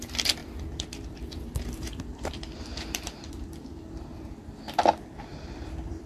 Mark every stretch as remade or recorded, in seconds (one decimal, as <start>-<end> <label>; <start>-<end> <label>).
0.0-0.4 recorded; 0.4-4.1 remade; 4.1-5.3 recorded; 5.3-6.1 remade